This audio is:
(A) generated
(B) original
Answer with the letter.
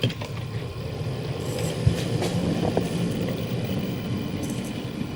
B